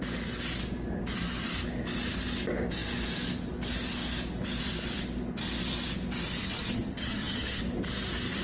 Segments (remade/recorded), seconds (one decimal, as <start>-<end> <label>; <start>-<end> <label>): 0.0-6.4 recorded; 6.4-7.6 remade; 7.6-8.4 recorded